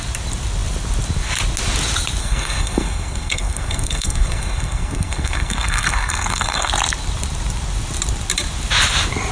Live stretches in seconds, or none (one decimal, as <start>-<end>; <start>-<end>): 0.0-2.2; 6.7-9.3